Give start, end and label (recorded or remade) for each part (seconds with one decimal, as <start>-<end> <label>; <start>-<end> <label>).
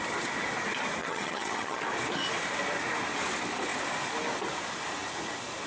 0.0-1.0 recorded; 1.0-1.8 remade; 1.8-5.7 recorded